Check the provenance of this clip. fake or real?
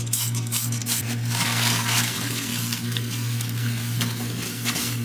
fake